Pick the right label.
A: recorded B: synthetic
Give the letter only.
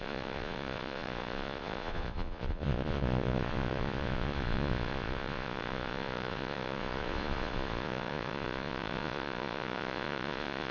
B